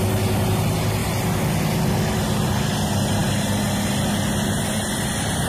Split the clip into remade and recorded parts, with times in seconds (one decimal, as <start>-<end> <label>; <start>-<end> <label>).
0.0-5.5 recorded